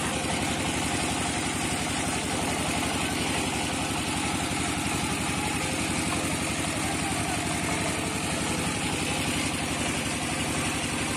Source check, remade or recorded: recorded